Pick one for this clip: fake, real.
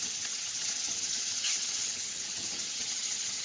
fake